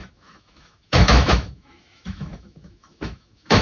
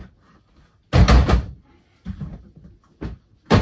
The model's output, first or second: first